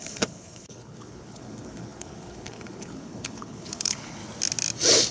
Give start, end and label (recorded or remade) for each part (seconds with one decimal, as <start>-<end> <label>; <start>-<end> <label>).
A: 0.0-4.2 remade; 4.2-5.1 recorded